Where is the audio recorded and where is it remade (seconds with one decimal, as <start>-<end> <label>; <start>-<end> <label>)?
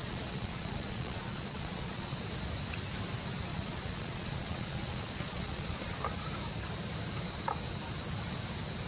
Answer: 0.0-2.2 remade; 2.2-3.5 recorded; 3.5-6.0 remade; 6.0-8.9 recorded